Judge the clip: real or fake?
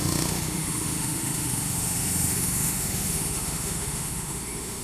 fake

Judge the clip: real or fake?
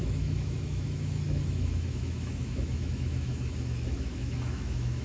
fake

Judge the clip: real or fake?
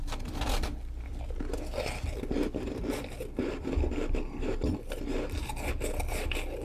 real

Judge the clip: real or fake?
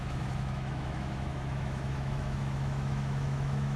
fake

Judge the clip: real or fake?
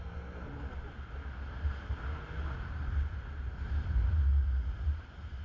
real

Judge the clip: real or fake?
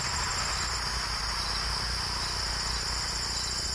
real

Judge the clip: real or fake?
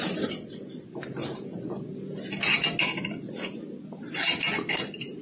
real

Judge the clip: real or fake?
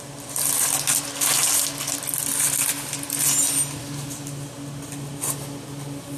real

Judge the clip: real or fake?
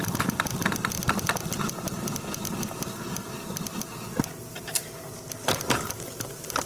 real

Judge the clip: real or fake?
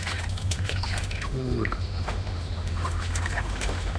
fake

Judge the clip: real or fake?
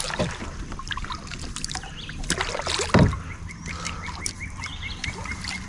real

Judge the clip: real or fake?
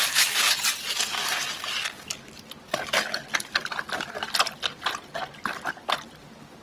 real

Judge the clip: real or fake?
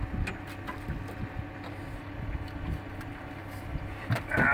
real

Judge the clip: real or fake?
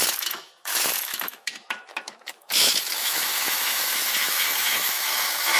fake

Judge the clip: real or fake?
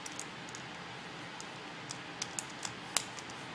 real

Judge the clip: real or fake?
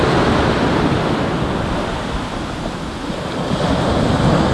real